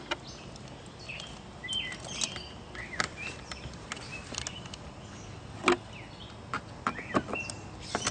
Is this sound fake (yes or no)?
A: no